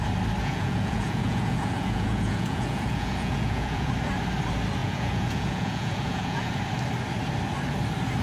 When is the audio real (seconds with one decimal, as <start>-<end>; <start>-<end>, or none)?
0.0-0.4; 3.9-4.8; 6.6-8.2